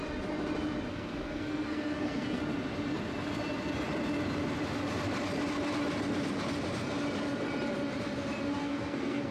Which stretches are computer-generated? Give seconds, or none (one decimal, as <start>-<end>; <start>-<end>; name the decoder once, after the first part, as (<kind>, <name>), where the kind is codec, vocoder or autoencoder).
0.9-2.4 (codec, SNAC); 8.6-9.3